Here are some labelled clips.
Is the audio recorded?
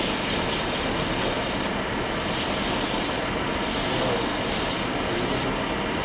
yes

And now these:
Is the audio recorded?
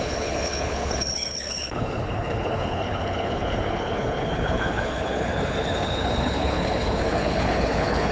no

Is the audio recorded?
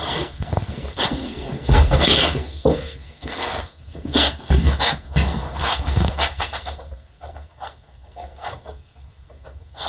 no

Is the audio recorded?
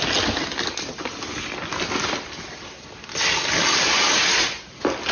yes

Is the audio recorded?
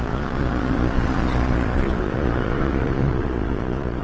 no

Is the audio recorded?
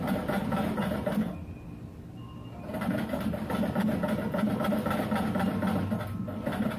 yes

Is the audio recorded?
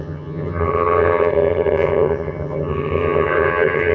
no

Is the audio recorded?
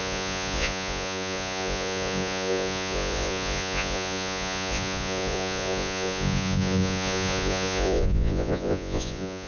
no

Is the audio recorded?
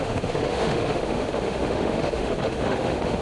no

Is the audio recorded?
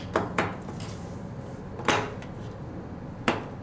yes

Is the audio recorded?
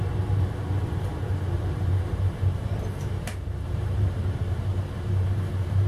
no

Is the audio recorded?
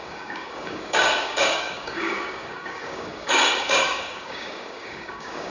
no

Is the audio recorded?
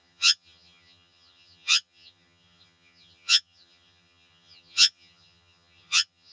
no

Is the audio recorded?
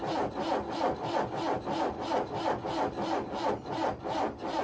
no